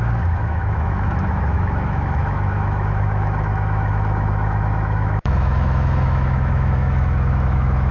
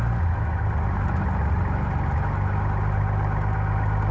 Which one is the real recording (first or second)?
second